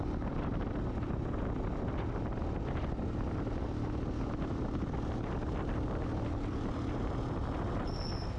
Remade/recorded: recorded